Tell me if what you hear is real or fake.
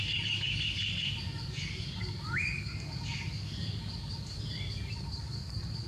fake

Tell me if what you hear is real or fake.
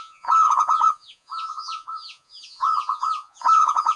fake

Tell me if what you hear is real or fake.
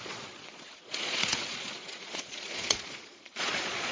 fake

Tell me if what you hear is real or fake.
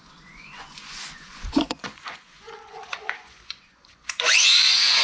fake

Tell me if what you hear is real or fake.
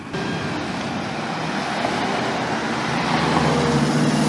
real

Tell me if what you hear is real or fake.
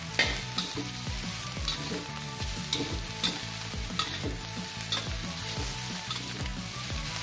real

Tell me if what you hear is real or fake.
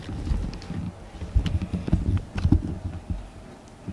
real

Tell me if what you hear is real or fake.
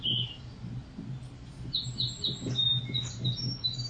real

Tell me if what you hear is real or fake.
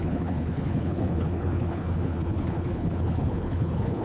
fake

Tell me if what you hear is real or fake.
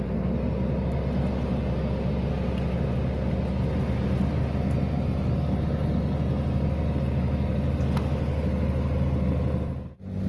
real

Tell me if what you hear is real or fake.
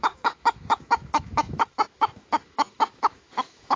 fake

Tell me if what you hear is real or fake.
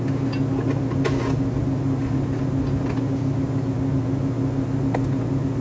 real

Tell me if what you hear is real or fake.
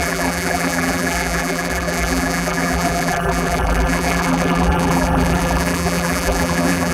fake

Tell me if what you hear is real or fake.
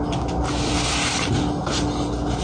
real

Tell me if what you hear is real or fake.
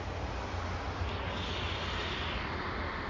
real